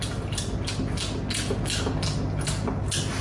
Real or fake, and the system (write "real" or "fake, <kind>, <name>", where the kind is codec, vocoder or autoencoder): real